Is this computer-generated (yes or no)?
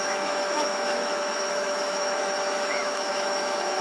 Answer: yes